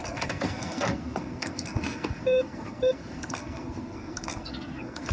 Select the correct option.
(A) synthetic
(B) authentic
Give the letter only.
A